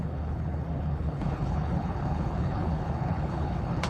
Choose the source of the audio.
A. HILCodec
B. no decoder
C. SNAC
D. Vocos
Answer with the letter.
A